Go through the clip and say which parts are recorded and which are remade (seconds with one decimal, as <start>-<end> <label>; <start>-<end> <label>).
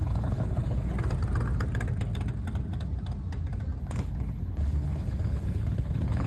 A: 0.0-0.9 remade; 0.9-3.8 recorded; 3.8-6.3 remade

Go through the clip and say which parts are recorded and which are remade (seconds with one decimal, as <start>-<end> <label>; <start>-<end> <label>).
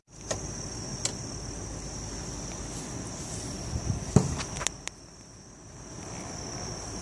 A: 0.0-7.0 recorded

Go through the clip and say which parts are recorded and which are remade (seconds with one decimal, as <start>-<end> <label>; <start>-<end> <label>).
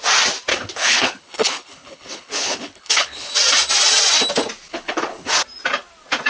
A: 0.0-0.5 recorded; 0.5-3.3 remade; 3.3-4.7 recorded; 4.7-5.3 remade; 5.3-6.3 recorded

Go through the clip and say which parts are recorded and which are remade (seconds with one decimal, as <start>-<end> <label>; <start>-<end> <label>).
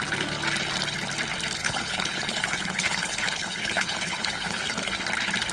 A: 0.0-1.6 recorded; 1.6-4.9 remade; 4.9-5.5 recorded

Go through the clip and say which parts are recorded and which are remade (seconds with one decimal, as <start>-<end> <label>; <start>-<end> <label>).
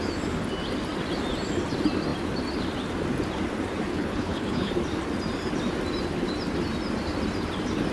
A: 0.0-3.9 recorded; 3.9-4.7 remade; 4.7-7.9 recorded